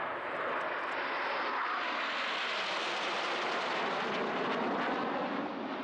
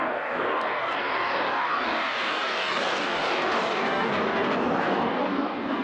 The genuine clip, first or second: first